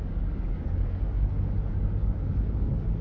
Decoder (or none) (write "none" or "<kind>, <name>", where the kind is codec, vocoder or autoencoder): codec, DAC